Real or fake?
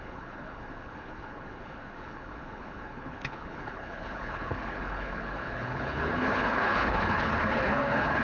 fake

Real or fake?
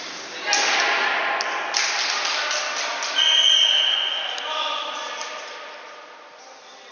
real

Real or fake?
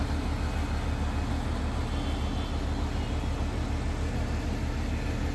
real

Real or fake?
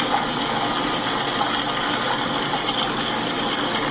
real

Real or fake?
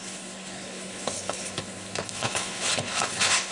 fake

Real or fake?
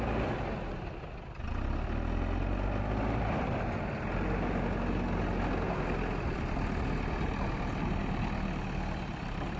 real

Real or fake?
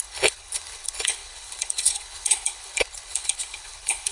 fake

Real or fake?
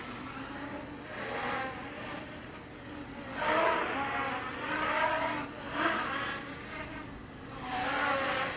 real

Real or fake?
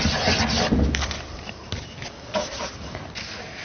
real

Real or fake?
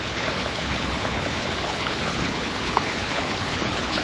fake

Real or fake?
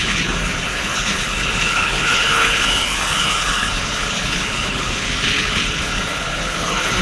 fake